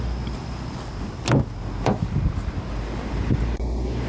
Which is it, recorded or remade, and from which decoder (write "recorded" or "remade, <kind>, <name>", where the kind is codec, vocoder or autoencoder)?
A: recorded